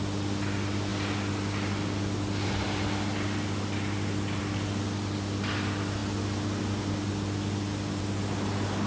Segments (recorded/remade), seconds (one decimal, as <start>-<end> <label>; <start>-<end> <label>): 0.0-8.9 recorded